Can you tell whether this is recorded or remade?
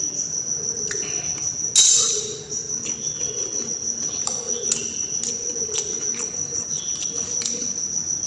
recorded